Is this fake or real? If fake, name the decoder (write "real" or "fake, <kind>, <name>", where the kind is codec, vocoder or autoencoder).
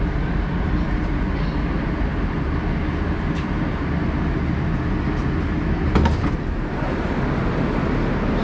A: real